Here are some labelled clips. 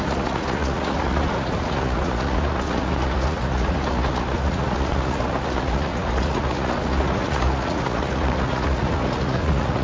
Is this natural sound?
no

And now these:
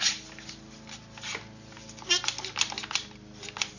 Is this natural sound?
yes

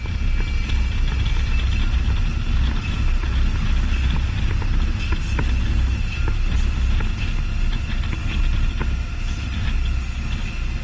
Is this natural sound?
yes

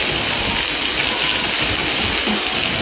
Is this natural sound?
yes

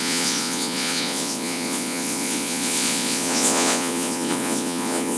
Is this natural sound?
no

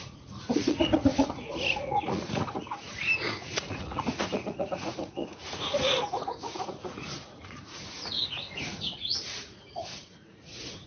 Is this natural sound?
no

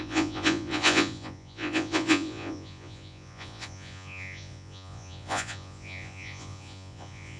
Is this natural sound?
no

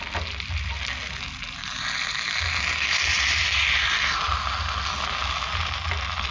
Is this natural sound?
yes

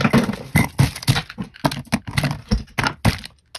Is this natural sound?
yes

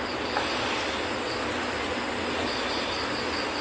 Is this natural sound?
yes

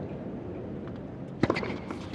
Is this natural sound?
yes